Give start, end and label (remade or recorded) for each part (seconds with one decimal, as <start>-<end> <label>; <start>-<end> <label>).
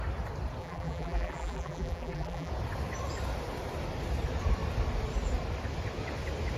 0.0-0.6 recorded; 0.6-2.5 remade; 2.5-6.6 recorded